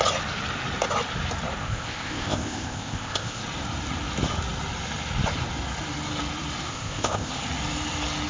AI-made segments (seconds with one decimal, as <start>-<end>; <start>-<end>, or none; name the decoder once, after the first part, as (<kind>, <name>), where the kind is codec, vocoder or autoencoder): 1.6-3.4 (codec, ZipCodec); 6.7-7.3